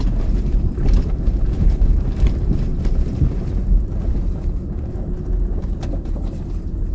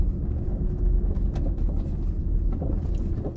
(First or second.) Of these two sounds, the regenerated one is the first